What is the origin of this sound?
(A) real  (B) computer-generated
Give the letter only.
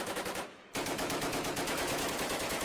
B